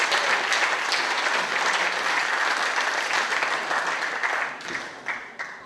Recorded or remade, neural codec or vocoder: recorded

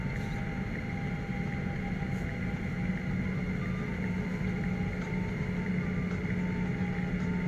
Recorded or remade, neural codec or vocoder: recorded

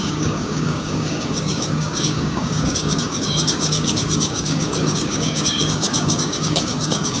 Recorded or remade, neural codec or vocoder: remade, codec, DAC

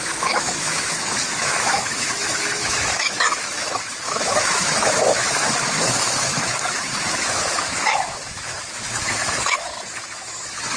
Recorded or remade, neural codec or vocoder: remade, autoencoder, DAC-VAE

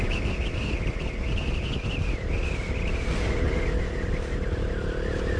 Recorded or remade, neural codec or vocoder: recorded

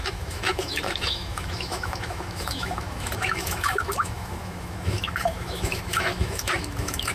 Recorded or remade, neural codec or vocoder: remade, autoencoder, DAC-VAE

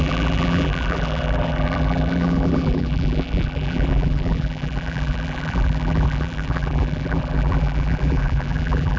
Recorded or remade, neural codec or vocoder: remade, vocoder, BigVGAN v2